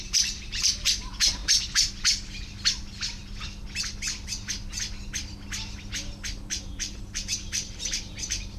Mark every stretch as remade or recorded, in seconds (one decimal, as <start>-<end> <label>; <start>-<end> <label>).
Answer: 0.0-1.4 remade; 1.4-6.5 recorded; 6.5-8.6 remade